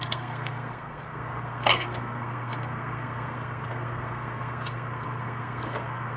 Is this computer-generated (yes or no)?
yes